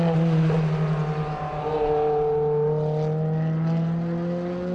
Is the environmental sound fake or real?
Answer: real